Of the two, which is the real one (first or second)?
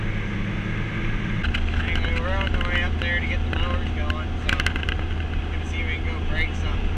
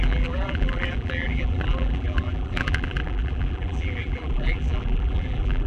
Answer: first